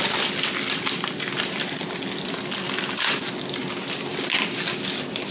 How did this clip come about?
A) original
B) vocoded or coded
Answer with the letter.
A